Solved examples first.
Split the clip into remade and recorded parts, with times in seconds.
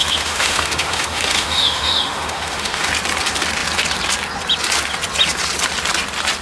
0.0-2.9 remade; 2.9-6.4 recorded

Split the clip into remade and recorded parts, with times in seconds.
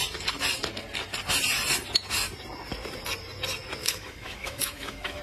0.0-3.8 recorded; 3.8-5.2 remade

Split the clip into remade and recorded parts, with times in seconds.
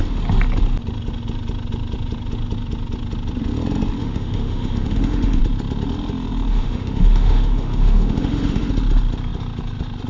0.0-4.0 recorded; 4.0-5.4 remade; 5.4-6.5 recorded; 6.5-8.7 remade; 8.7-10.1 recorded